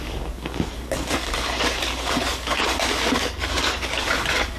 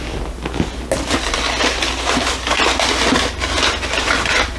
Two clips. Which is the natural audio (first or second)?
second